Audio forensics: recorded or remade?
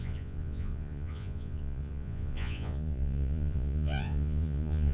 remade